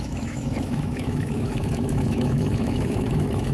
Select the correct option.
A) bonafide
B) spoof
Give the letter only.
B